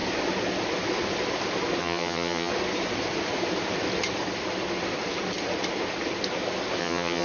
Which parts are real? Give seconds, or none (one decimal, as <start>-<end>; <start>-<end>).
0.0-1.8; 2.5-6.8